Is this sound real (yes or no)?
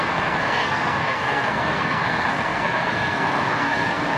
no